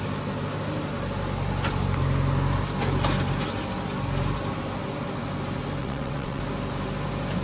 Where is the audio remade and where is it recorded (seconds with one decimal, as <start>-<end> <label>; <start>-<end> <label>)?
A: 0.0-5.8 recorded; 5.8-6.4 remade; 6.4-7.4 recorded